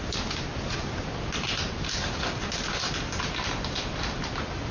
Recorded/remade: recorded